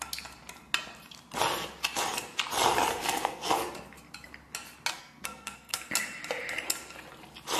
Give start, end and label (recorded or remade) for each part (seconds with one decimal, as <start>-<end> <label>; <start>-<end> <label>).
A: 0.0-2.9 recorded; 2.9-3.5 remade; 3.5-4.9 recorded; 4.9-5.9 remade; 5.9-7.6 recorded